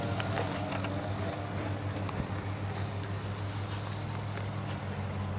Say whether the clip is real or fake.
real